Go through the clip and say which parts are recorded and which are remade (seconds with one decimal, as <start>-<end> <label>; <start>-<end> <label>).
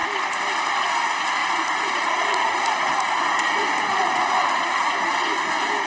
0.0-1.4 recorded; 1.4-4.9 remade; 4.9-5.9 recorded